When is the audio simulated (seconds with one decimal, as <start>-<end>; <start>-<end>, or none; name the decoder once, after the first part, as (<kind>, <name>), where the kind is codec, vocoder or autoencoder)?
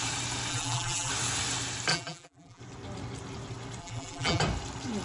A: 0.5-1.1 (vocoder, BigVGAN v2); 1.9-2.6; 3.8-4.4